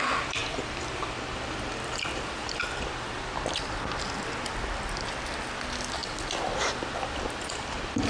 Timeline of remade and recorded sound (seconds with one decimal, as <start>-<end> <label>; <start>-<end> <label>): 0.0-0.4 recorded; 0.4-3.9 remade; 3.9-6.0 recorded; 6.0-6.6 remade; 6.6-8.1 recorded